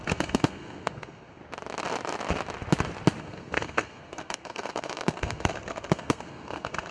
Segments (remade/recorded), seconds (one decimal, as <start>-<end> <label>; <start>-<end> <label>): 0.0-1.4 remade; 1.4-3.2 recorded; 3.2-6.9 remade